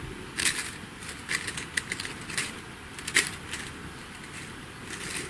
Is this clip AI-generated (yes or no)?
no